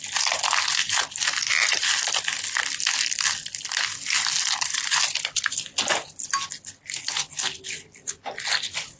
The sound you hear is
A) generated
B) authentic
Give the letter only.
B